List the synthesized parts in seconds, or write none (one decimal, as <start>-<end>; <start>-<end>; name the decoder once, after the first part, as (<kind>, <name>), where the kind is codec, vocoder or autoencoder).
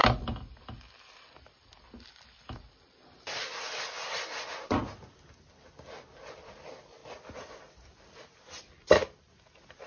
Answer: none